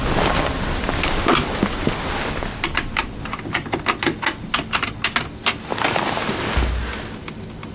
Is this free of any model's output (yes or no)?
yes